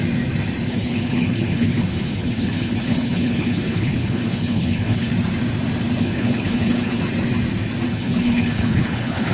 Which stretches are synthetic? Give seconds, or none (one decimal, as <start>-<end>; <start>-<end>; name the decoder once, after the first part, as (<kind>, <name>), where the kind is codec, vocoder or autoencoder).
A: 0.7-5.1 (codec, HILCodec); 6.0-7.0; 7.9-9.3

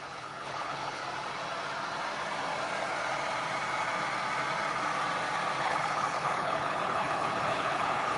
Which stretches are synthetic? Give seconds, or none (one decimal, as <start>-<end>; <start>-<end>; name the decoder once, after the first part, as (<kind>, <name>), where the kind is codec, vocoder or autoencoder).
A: 0.0-1.0 (codec, HILCodec); 5.6-8.2